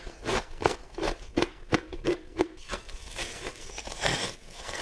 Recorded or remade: remade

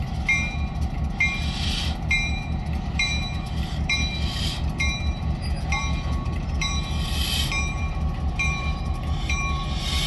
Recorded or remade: remade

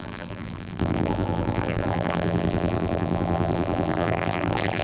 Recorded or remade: remade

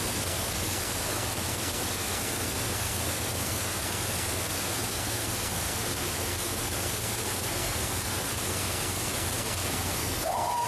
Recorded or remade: remade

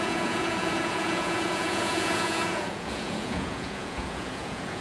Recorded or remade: remade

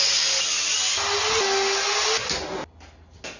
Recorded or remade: recorded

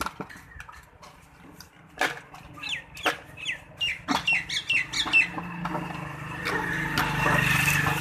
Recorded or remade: recorded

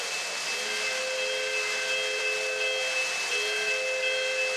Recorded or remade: recorded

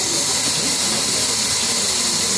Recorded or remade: recorded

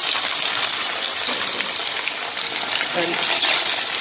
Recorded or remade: recorded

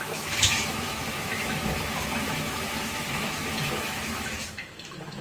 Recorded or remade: remade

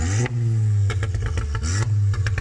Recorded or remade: recorded